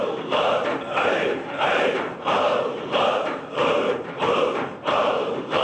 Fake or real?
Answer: fake